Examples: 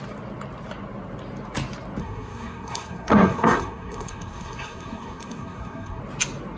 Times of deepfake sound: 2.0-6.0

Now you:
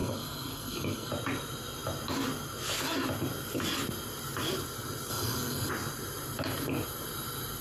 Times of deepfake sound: 0.0-1.1; 5.1-5.7